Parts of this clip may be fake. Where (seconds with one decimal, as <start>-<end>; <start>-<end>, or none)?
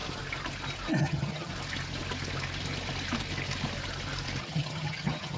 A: 1.0-1.5; 4.4-5.4